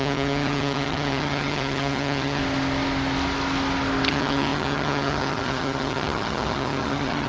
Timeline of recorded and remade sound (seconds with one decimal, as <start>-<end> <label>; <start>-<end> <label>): 0.0-2.4 remade; 2.4-4.1 recorded; 4.1-7.3 remade